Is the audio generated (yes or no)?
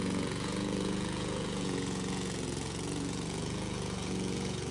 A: yes